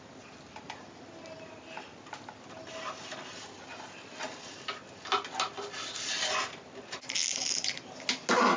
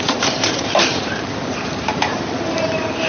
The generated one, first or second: second